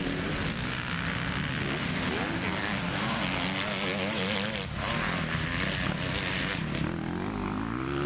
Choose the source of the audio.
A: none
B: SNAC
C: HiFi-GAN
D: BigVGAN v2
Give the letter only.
A